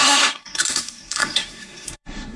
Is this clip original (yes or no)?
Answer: no